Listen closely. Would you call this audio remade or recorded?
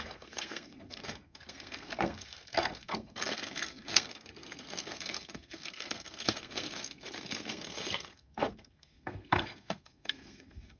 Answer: remade